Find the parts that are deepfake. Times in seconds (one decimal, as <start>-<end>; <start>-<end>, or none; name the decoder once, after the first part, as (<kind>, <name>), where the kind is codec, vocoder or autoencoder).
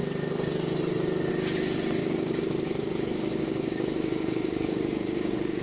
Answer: 2.0-5.6 (codec, DAC)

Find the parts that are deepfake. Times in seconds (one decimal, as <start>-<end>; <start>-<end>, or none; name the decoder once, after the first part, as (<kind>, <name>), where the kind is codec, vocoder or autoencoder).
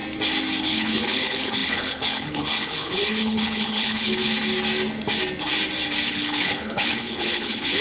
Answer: 0.6-4.3 (codec, HILCodec); 6.1-7.8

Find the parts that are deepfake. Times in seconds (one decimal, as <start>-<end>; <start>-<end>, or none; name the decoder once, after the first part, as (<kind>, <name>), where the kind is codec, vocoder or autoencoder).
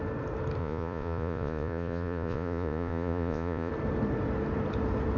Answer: 0.6-3.7 (vocoder, Vocos)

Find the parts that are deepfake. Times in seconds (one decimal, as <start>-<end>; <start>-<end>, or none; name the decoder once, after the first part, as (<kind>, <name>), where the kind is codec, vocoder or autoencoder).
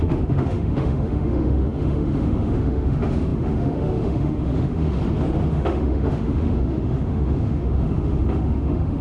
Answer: 0.0-5.0 (autoencoder, DAC-VAE); 5.5-9.0